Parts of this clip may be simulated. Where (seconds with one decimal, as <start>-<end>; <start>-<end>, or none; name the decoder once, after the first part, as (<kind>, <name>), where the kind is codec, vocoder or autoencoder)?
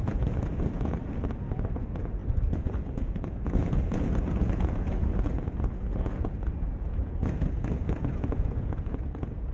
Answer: 0.0-9.5 (vocoder, Vocos)